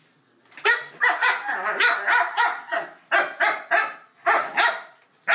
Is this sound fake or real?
real